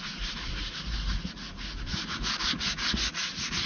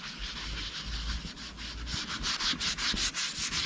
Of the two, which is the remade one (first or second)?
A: first